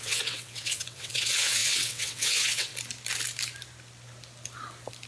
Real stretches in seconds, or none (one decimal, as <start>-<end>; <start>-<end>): 2.7-5.1